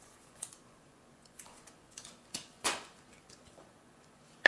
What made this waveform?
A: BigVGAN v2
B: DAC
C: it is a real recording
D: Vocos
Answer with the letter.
D